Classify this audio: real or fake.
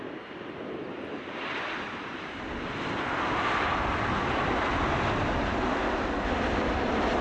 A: real